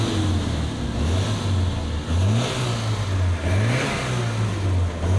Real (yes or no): yes